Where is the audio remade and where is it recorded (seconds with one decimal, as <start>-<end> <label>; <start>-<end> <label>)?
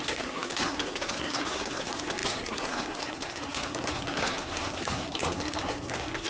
0.0-6.3 remade